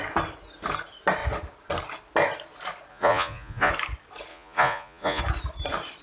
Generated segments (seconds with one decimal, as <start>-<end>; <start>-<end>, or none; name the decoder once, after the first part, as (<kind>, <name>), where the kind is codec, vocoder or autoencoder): 2.9-3.7 (vocoder, Vocos); 4.3-5.2